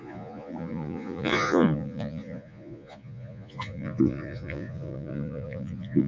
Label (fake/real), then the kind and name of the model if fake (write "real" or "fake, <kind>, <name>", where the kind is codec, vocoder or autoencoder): fake, vocoder, Vocos